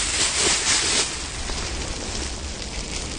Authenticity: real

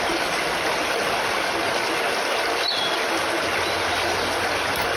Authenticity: real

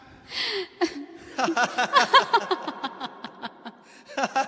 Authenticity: real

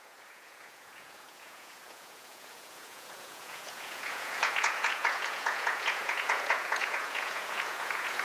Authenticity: fake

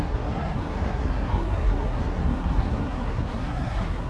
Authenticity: fake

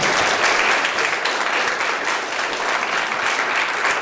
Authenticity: real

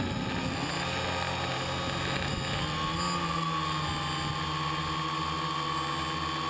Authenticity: real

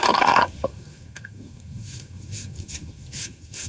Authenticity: fake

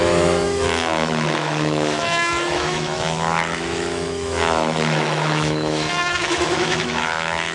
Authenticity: fake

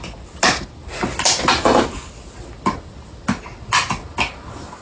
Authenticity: real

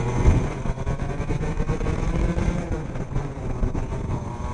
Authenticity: fake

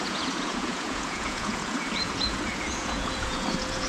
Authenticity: fake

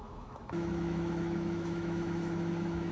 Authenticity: fake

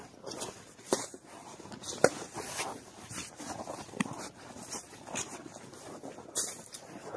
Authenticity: fake